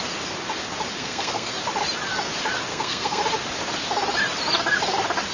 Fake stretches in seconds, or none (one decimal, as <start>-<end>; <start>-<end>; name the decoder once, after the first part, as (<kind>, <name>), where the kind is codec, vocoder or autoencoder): 1.0-1.5 (codec, SNAC); 2.7-3.2

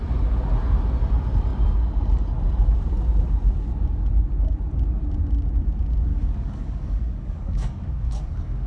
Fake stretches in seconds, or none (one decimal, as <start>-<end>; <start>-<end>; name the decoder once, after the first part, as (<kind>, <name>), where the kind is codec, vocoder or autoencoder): 6.1-8.7 (codec, DAC)

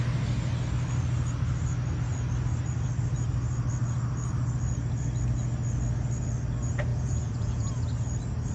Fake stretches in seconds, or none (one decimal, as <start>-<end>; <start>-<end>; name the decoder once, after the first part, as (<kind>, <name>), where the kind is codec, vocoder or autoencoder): 6.9-7.7 (vocoder, Vocos)

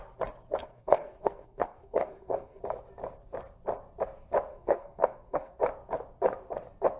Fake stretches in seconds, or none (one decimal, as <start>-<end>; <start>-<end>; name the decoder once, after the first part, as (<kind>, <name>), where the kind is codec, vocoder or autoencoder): 0.6-2.6 (codec, SNAC); 4.5-5.6